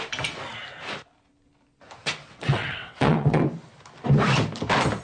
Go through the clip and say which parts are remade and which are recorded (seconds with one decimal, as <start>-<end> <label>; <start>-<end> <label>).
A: 0.0-2.2 recorded; 2.2-3.4 remade; 3.4-5.0 recorded